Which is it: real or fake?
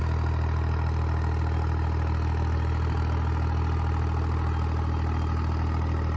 real